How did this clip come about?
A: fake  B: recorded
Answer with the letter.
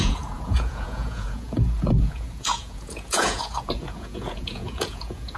A